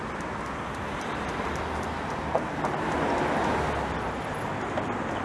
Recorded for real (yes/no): yes